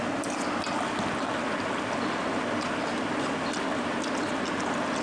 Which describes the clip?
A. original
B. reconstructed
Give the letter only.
A